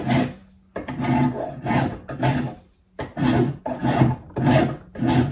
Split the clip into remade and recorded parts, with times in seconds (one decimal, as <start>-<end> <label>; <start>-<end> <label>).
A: 0.0-5.3 recorded